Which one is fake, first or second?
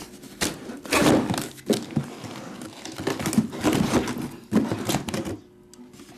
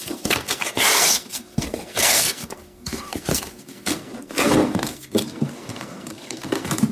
second